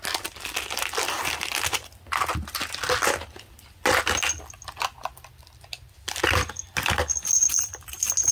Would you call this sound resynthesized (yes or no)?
no